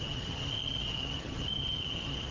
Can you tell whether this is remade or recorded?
remade